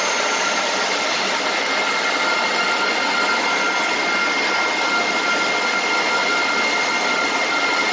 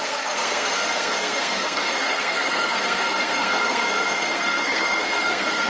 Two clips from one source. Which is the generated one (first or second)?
second